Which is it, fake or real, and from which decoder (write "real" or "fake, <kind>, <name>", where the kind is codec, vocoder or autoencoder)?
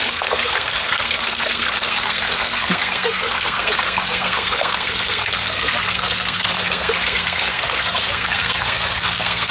fake, codec, SNAC